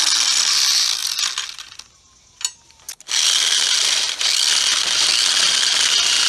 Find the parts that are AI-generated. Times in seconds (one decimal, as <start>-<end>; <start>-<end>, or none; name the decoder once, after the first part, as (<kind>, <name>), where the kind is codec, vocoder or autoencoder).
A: none